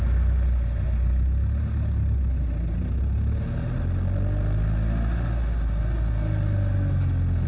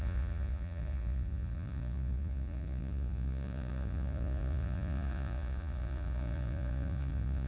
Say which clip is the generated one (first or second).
second